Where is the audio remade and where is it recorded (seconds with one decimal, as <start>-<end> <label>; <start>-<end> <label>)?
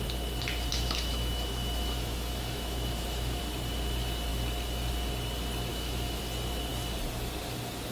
0.0-0.7 recorded; 0.7-3.4 remade; 3.4-5.7 recorded; 5.7-6.2 remade; 6.2-7.9 recorded